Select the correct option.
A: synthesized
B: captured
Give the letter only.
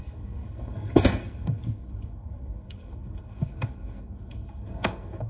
A